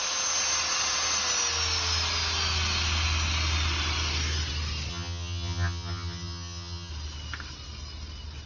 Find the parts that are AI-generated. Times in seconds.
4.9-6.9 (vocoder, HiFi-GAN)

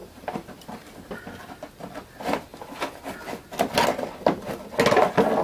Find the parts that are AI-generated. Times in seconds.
0.0-1.2 (vocoder, BigVGAN v2)

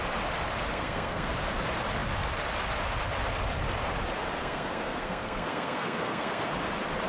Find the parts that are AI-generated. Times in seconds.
0.7-1.3 (codec, SNAC); 4.4-6.5

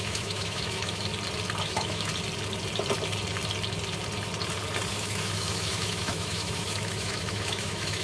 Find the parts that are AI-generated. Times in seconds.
0.0-1.1 (autoencoder, DAC-VAE); 1.6-2.1; 4.9-8.0

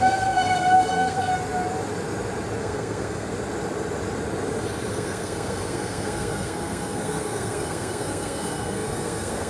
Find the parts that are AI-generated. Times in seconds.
0.0-1.3 (codec, SNAC); 2.6-3.3; 4.9-9.5

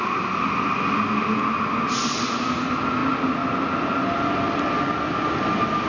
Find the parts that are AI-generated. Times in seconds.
none

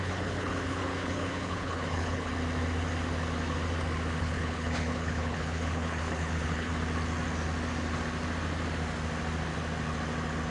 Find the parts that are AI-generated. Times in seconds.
0.0-2.3 (codec, HILCodec); 4.2-6.7